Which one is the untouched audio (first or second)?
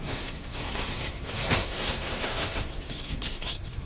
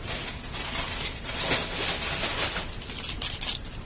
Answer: second